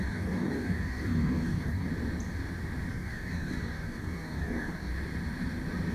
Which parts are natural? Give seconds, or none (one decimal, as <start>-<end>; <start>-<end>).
1.9-2.9; 4.9-5.9